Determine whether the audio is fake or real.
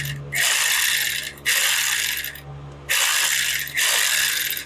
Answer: real